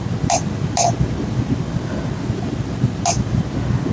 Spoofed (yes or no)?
no